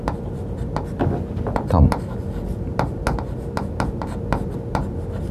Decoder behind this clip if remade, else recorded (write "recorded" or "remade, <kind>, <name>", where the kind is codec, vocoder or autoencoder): recorded